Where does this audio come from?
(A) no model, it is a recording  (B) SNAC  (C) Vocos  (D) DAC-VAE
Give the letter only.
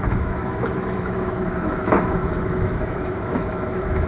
D